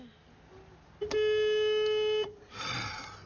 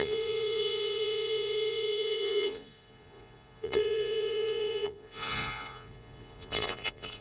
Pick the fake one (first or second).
second